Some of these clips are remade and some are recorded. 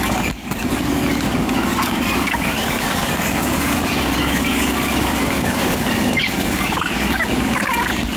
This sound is remade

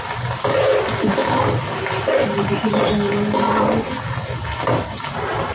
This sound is recorded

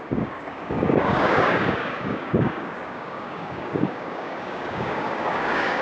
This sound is remade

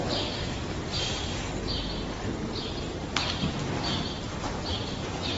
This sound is recorded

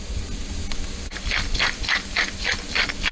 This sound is recorded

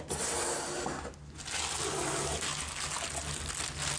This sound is recorded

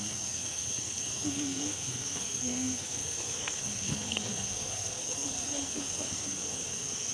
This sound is remade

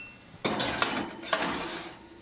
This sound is recorded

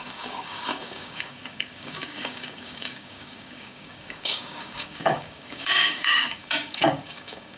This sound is remade